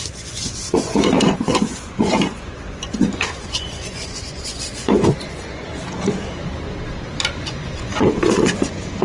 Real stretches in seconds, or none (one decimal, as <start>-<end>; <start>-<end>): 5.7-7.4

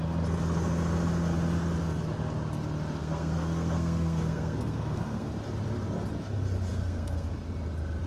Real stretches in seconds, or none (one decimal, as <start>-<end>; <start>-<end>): 0.0-3.0; 5.3-6.7; 7.3-8.1

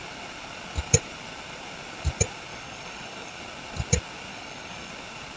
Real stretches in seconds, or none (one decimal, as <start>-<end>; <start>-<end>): 0.0-2.5; 3.4-4.3; 4.9-5.4

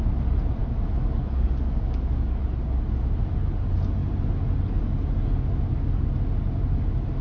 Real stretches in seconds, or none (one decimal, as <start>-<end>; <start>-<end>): 0.0-0.6; 2.4-7.2